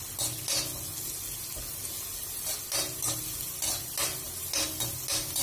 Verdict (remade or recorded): recorded